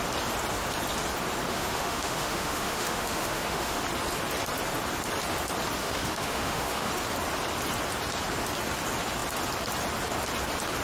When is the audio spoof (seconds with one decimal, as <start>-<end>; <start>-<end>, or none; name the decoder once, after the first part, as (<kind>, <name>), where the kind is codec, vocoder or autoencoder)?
1.5-3.8 (autoencoder, DAC-VAE); 5.8-6.9